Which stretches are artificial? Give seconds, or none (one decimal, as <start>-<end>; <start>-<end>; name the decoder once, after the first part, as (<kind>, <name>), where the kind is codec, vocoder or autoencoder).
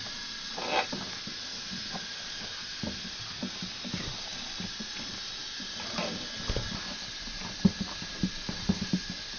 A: none